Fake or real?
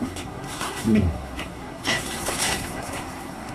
fake